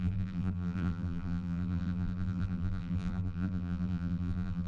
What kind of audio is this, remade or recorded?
remade